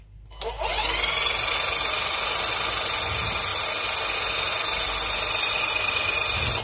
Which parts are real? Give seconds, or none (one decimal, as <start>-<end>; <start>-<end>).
0.0-6.6